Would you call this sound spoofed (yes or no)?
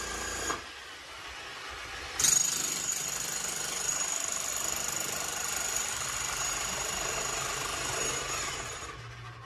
no